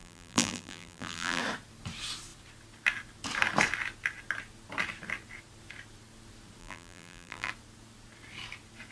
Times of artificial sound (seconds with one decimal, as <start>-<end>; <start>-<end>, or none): 0.0-1.4; 6.6-7.5

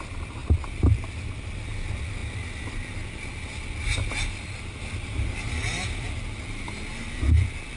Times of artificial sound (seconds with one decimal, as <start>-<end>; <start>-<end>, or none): 0.0-2.2; 4.1-7.8

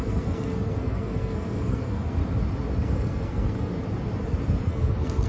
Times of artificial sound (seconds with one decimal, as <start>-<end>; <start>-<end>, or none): 0.0-2.2; 2.8-3.7; 4.6-5.3

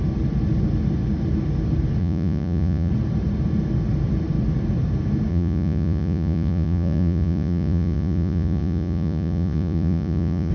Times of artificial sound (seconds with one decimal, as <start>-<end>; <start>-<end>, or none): 2.0-2.9; 5.3-10.5